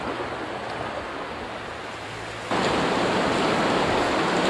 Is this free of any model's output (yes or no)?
yes